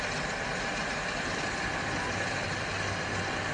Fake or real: real